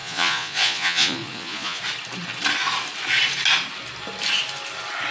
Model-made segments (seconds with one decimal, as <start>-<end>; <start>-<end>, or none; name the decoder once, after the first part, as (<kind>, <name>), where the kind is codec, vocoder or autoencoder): 0.0-1.8 (vocoder, Vocos)